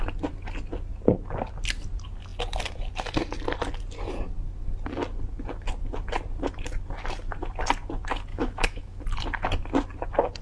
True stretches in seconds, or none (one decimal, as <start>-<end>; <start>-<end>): 0.0-8.3; 9.0-10.4